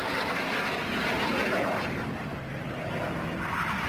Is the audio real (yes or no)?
yes